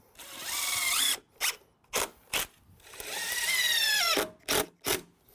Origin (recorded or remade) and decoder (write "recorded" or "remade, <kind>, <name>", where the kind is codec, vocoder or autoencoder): recorded